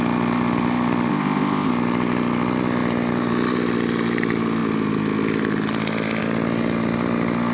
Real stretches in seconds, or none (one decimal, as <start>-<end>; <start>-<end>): 0.0-1.1; 1.7-7.5